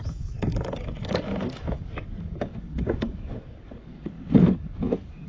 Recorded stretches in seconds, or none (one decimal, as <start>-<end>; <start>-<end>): none